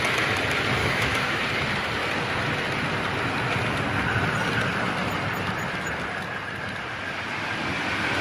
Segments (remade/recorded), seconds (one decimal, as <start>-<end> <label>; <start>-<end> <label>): 0.0-0.8 recorded; 0.8-1.4 remade; 1.4-8.2 recorded